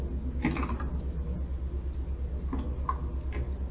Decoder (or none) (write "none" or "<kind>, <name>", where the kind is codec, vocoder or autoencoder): none